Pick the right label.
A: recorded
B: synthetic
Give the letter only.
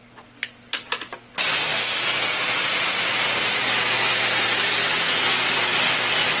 A